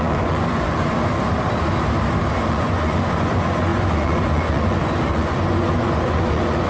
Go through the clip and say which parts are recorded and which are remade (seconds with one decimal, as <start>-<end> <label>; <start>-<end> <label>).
0.0-1.1 remade; 1.1-2.5 recorded; 2.5-6.7 remade